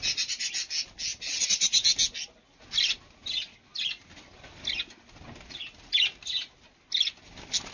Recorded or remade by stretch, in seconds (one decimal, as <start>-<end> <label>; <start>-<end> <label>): 0.0-1.1 recorded; 1.1-1.8 remade; 1.8-7.7 recorded